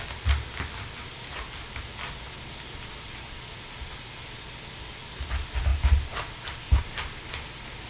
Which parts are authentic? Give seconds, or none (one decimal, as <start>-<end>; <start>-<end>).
0.0-7.9